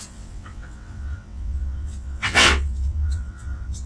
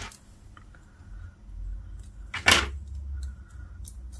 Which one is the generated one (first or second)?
first